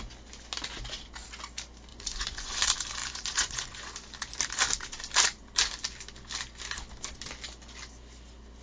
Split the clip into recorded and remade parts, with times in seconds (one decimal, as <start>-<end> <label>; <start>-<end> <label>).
0.0-1.9 recorded; 1.9-2.5 remade; 2.5-3.0 recorded; 3.0-3.8 remade; 3.8-8.6 recorded